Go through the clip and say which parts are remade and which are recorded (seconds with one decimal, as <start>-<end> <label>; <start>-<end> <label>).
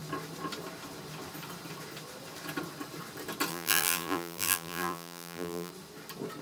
0.0-3.5 recorded; 3.5-5.7 remade; 5.7-6.4 recorded